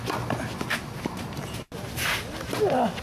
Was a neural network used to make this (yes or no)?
no